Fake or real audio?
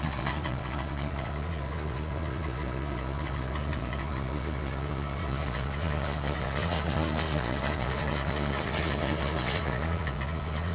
fake